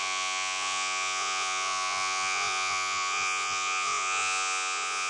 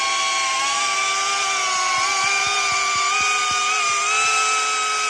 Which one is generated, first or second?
first